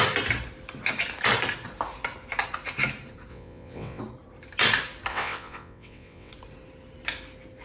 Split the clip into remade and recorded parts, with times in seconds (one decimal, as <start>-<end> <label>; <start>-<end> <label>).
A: 0.0-3.3 recorded; 3.3-4.0 remade; 4.0-5.1 recorded; 5.1-6.3 remade; 6.3-7.6 recorded